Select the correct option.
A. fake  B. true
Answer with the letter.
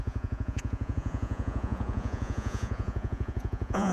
A